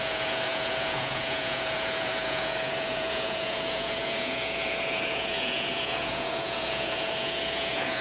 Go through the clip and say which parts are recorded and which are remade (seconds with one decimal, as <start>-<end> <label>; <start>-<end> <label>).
0.0-8.0 remade